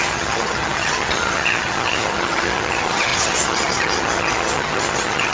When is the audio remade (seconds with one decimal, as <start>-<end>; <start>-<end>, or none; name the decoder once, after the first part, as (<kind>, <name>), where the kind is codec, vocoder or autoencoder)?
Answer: 0.0-5.3 (vocoder, HiFi-GAN)